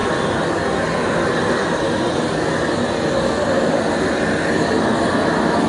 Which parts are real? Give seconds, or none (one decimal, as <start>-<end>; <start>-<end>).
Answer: 0.0-5.7